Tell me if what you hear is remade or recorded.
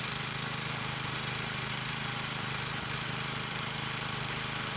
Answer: remade